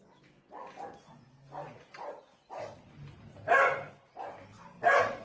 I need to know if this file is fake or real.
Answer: real